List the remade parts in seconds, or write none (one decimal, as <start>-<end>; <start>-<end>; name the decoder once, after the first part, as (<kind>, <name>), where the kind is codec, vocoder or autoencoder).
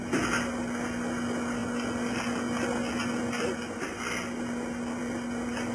none